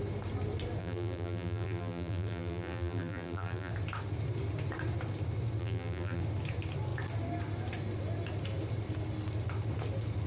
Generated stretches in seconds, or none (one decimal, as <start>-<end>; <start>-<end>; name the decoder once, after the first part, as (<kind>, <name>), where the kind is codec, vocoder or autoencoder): 0.8-3.7 (vocoder, BigVGAN v2); 5.6-6.2